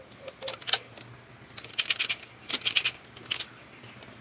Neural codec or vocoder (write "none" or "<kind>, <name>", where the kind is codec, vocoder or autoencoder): none